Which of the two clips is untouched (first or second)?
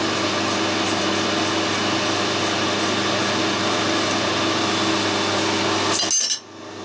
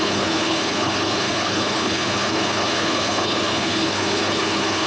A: first